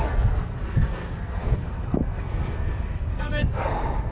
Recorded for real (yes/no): no